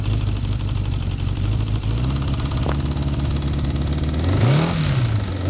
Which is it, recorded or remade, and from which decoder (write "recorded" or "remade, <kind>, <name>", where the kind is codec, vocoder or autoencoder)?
recorded